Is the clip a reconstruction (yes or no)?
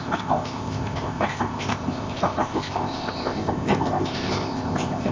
yes